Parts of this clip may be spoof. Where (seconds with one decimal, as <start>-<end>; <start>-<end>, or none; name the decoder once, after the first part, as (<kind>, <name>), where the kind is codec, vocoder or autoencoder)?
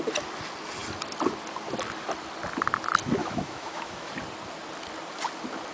3.2-4.1 (autoencoder, DAC-VAE)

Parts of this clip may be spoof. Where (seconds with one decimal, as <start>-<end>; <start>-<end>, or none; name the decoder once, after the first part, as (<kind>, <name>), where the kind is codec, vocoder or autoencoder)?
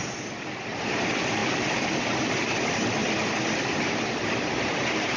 0.0-3.0 (vocoder, BigVGAN v2); 3.9-5.2